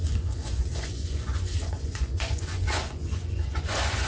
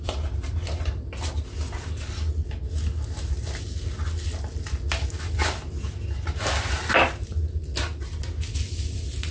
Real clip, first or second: second